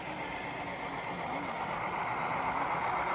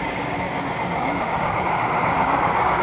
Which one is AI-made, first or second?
second